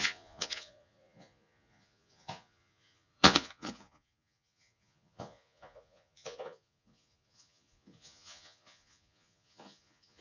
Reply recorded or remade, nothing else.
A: remade